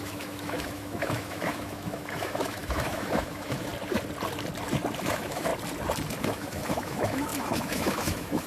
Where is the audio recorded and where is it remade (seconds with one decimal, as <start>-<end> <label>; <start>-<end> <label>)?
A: 0.0-3.7 remade; 3.7-5.0 recorded; 5.0-5.5 remade; 5.5-6.2 recorded; 6.2-8.5 remade